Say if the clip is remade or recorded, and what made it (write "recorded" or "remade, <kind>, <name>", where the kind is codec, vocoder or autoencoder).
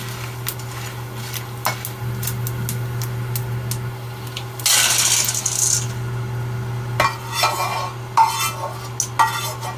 recorded